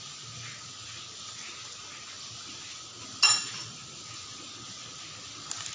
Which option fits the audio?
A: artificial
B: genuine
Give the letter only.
B